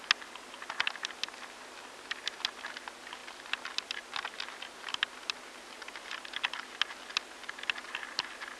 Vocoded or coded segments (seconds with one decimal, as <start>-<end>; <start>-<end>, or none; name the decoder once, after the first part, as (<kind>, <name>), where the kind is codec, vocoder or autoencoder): none